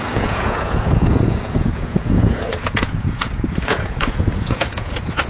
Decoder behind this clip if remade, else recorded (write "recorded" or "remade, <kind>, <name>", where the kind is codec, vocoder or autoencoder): remade, vocoder, Vocos